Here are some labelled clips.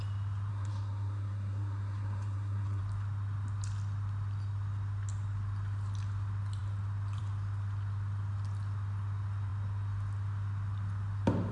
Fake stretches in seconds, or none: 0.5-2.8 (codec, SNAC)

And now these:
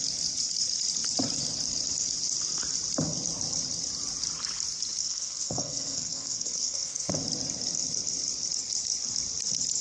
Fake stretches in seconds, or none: 5.0-7.1 (codec, SNAC)